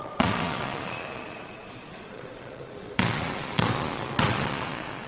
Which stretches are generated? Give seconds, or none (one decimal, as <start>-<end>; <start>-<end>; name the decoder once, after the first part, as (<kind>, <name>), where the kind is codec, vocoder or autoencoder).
0.0-5.1 (vocoder, Vocos)